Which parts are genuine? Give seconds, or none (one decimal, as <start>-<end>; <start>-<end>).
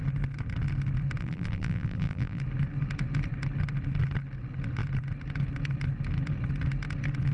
0.0-1.2; 2.4-7.3